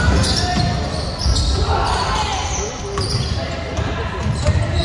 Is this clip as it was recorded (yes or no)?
yes